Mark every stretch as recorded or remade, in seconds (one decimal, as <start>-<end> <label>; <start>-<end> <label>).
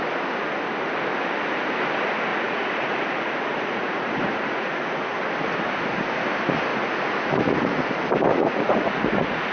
0.0-2.3 recorded; 2.3-5.0 remade; 5.0-6.7 recorded; 6.7-7.8 remade; 7.8-8.3 recorded; 8.3-9.5 remade